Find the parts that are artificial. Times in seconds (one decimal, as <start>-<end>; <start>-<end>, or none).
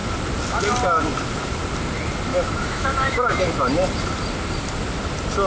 2.3-3.4